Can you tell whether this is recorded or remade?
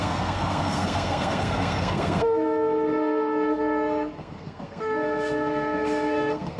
remade